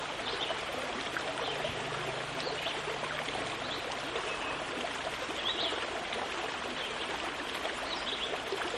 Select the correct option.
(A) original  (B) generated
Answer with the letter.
A